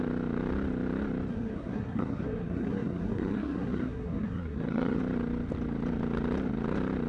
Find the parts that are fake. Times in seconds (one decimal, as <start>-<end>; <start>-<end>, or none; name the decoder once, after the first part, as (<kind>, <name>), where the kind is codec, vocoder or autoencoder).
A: 1.3-5.0 (codec, SNAC)